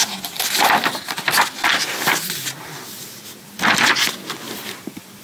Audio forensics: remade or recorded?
recorded